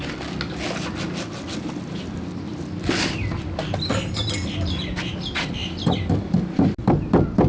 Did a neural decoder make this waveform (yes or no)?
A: no